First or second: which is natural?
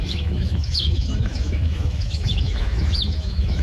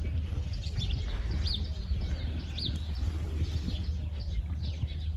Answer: second